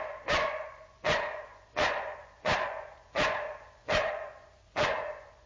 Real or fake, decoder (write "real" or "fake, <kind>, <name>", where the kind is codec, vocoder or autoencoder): fake, vocoder, Vocos